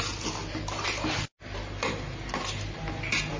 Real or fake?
real